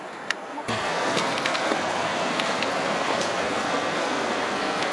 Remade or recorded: remade